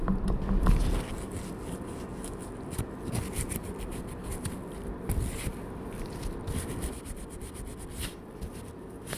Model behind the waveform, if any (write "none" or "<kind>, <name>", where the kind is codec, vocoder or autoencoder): none